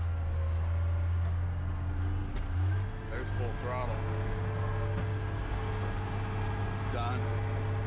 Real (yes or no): yes